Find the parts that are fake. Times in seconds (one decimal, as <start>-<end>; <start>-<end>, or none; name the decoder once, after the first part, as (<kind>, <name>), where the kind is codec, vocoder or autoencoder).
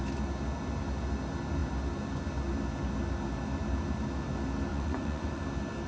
4.7-5.4 (vocoder, Vocos)